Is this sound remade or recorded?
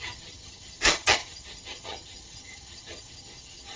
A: remade